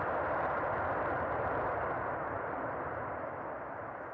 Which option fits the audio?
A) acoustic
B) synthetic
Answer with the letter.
B